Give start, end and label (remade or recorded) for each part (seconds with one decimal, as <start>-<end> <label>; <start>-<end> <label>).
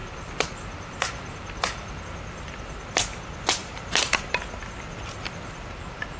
0.0-2.0 remade; 2.0-3.6 recorded; 3.6-4.5 remade; 4.5-6.2 recorded